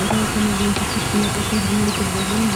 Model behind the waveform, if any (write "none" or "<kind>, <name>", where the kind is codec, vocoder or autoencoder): none